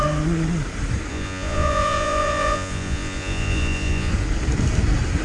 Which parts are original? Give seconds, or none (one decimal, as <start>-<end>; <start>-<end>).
0.0-1.1; 4.1-5.2